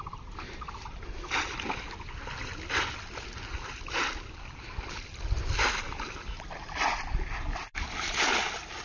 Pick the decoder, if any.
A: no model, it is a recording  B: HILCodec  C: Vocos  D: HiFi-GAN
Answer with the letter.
A